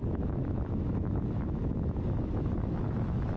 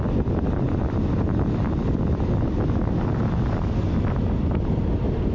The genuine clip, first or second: second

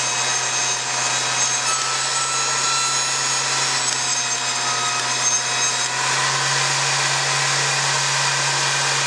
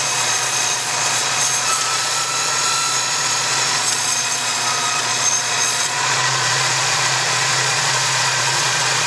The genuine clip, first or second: first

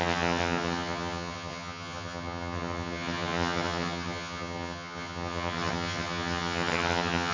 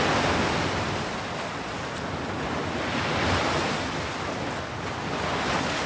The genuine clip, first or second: second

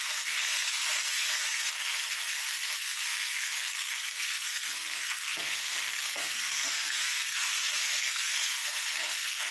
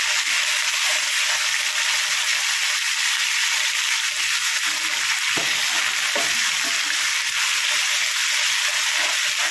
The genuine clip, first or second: second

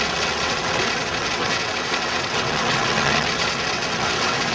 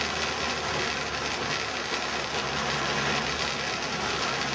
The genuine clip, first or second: second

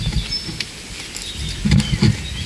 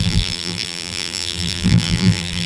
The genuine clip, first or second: first